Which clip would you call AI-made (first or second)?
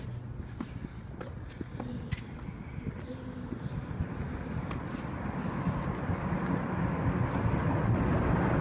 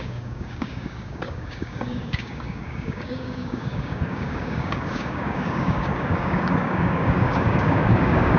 second